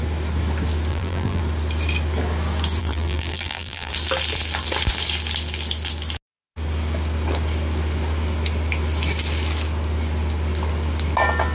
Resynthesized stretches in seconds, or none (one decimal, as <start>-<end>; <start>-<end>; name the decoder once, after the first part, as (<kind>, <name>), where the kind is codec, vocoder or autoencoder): 0.9-1.4 (vocoder, BigVGAN v2); 2.8-3.9